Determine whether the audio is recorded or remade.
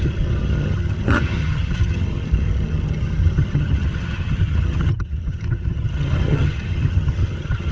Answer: remade